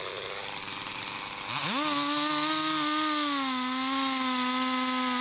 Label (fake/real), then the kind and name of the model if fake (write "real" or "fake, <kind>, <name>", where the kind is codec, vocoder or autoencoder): real